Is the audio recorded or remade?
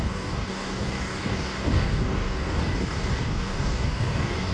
remade